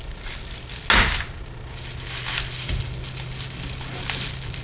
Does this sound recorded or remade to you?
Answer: recorded